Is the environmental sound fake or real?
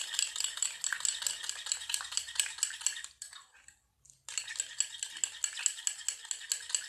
real